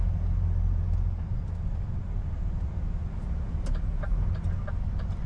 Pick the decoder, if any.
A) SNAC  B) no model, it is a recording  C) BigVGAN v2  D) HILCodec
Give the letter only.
B